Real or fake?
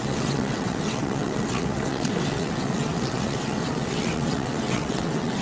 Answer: fake